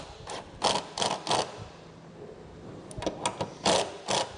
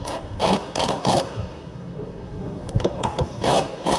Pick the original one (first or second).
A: first